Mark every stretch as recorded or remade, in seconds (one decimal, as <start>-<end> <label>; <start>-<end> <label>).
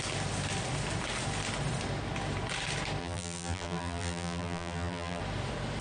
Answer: 0.0-3.0 recorded; 3.0-5.2 remade; 5.2-5.8 recorded